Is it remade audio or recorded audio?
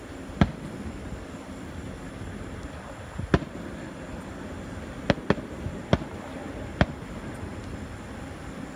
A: recorded